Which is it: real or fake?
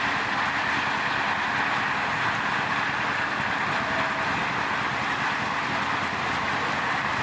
real